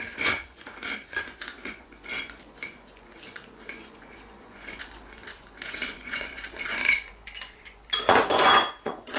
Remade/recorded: remade